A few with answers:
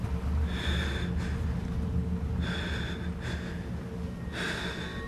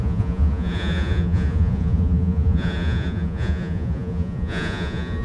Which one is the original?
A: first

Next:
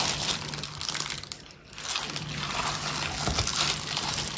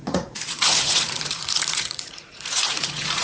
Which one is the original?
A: first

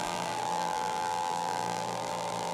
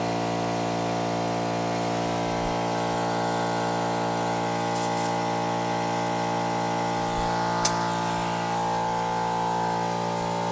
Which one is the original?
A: second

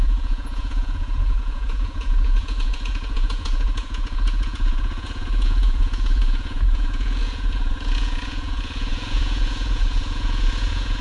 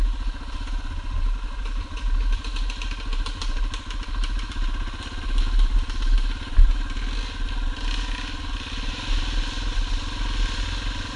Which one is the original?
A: second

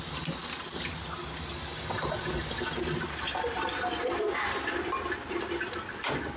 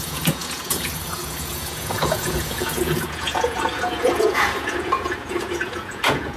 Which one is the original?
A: first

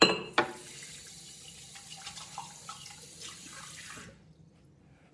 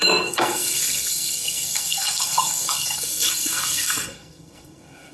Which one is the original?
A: first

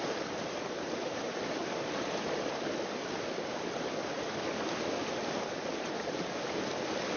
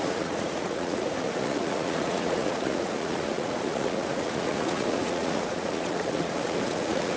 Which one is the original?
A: first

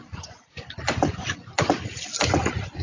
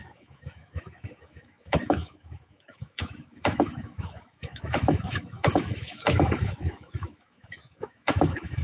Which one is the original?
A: first